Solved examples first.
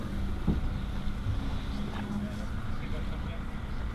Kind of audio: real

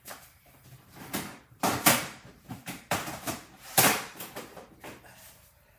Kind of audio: fake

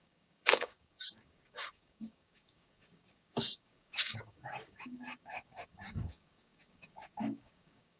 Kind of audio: fake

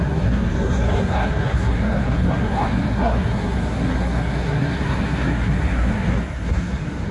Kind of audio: fake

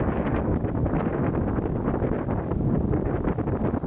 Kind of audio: real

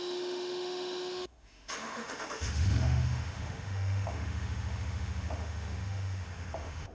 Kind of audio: fake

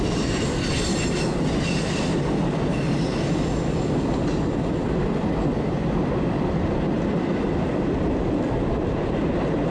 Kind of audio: real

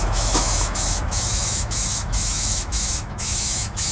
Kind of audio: fake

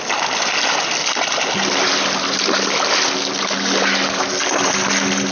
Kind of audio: real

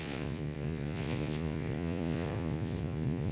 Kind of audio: fake